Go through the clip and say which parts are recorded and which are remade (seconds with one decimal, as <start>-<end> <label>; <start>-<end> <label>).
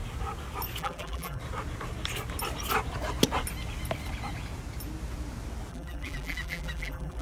0.0-0.8 recorded; 0.8-1.4 remade; 1.4-5.7 recorded; 5.7-7.2 remade